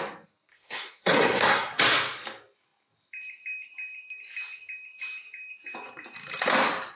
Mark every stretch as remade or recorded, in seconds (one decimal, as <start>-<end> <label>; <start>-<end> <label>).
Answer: 0.0-0.5 recorded; 0.5-1.8 remade; 1.8-7.0 recorded